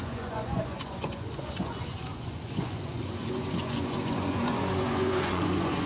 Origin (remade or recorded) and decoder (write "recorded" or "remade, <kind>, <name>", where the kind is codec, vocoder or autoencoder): remade, vocoder, Vocos